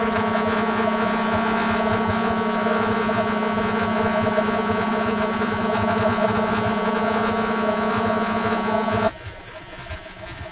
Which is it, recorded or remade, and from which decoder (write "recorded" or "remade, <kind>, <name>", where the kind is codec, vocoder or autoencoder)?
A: remade, vocoder, Vocos